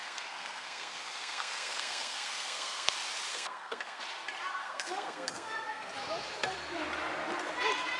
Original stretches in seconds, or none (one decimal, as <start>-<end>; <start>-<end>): 2.9-3.3; 4.0-4.6; 5.9-8.0